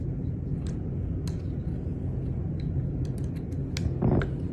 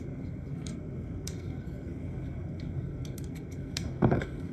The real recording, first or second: first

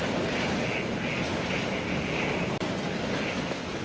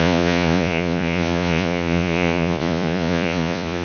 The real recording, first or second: first